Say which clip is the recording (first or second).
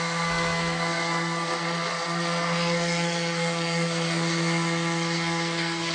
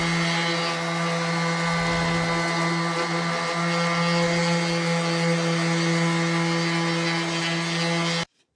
second